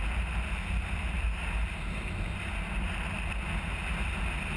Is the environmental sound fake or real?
real